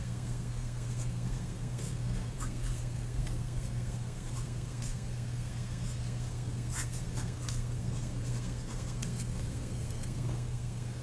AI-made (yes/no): yes